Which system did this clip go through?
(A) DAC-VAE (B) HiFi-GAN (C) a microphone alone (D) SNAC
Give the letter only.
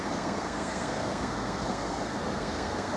D